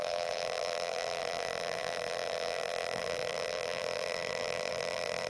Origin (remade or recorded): remade